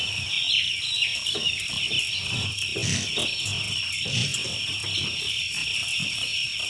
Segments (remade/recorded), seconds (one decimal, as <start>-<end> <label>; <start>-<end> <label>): 0.0-1.0 recorded; 1.0-3.1 remade; 3.1-3.5 recorded; 3.5-4.7 remade; 4.7-5.6 recorded; 5.6-6.1 remade; 6.1-6.7 recorded